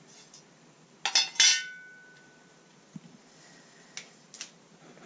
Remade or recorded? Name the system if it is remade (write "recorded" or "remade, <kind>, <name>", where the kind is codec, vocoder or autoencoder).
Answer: recorded